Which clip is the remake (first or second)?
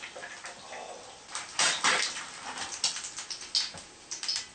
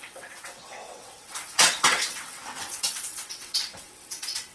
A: second